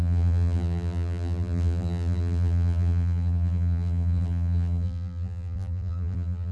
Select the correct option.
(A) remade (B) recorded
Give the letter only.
A